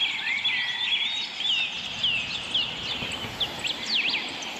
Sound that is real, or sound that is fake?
real